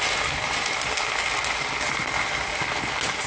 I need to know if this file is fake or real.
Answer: real